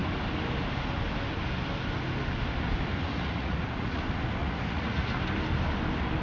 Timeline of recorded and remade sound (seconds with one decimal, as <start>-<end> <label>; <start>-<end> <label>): 0.0-3.1 recorded; 3.1-4.0 remade; 4.0-4.4 recorded; 4.4-5.1 remade; 5.1-6.2 recorded